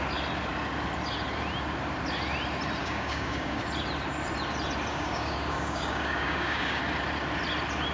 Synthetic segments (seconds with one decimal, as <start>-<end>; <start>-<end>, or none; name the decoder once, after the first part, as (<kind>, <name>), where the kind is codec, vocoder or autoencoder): 2.8-3.6 (codec, DAC); 4.9-6.8